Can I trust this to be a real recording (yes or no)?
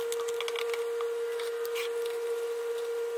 yes